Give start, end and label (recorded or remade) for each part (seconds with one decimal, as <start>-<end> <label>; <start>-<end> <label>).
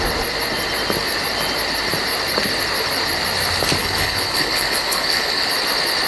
0.0-3.8 recorded; 3.8-5.5 remade; 5.5-6.1 recorded